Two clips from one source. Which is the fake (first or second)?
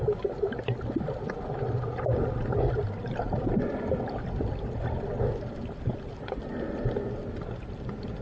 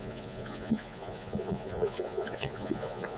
second